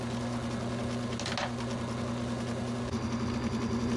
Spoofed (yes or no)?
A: no